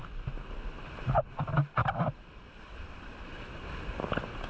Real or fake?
real